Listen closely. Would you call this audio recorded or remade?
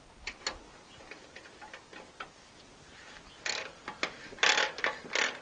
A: recorded